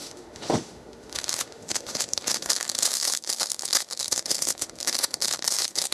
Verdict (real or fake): fake